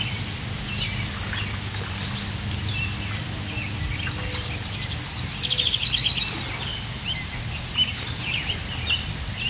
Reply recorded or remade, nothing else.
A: recorded